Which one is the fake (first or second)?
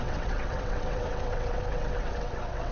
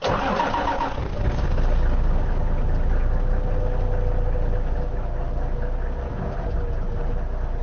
first